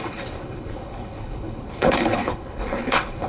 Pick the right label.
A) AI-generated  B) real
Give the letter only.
A